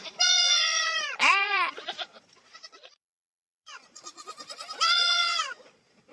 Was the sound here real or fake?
fake